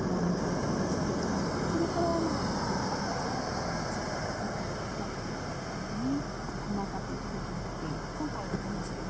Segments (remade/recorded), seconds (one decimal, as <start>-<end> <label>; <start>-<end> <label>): 0.0-9.1 recorded